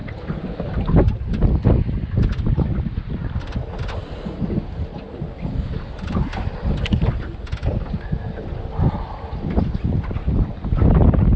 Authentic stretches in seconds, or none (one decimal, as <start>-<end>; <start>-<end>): 0.0-11.4